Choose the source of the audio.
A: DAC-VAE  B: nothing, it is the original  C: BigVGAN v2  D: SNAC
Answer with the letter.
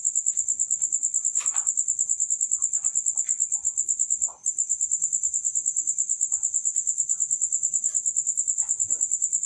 B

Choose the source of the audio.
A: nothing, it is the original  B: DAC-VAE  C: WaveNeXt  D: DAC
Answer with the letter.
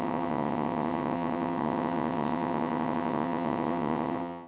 C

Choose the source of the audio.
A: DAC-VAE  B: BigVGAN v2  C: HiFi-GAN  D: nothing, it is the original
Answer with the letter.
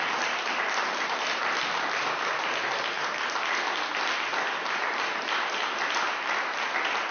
D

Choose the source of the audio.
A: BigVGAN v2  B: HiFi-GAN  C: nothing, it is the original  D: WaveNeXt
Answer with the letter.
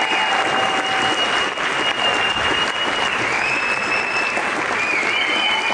C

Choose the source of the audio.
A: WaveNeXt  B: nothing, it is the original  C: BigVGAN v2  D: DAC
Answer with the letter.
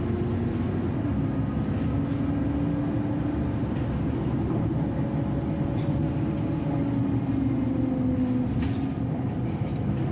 B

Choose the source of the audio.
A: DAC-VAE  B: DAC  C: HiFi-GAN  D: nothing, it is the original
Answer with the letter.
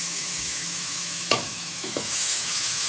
A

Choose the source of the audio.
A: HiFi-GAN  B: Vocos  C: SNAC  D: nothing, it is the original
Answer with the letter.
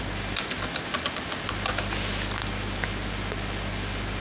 D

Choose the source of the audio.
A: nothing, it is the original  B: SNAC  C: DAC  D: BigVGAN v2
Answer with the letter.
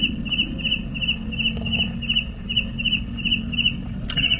A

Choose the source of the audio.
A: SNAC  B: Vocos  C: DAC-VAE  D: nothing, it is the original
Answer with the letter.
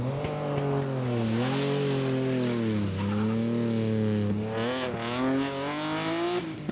D